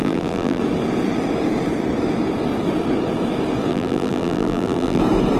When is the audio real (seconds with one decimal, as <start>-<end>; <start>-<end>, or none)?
0.6-3.7; 5.0-5.4